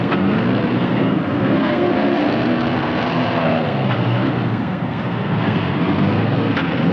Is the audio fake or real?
fake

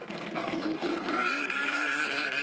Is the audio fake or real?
fake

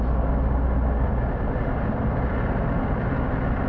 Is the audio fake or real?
real